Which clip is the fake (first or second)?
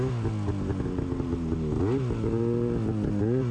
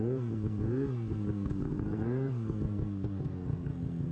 second